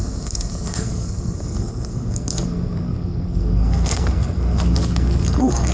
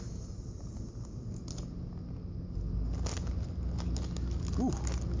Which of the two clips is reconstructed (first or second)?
first